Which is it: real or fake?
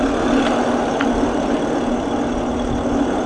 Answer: real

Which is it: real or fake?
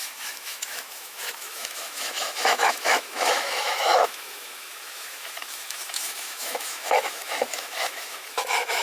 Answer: fake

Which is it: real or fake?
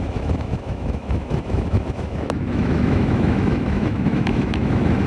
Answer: fake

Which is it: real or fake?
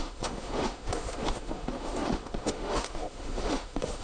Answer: fake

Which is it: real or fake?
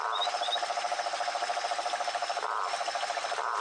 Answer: real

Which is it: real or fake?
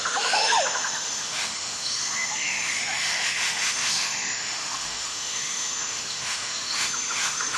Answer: fake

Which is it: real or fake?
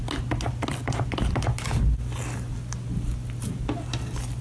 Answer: real